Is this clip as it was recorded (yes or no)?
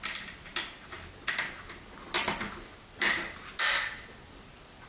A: yes